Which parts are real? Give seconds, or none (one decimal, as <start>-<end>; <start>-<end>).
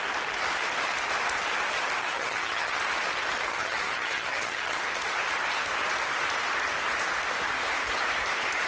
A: 0.0-2.0; 2.8-3.5; 4.8-8.7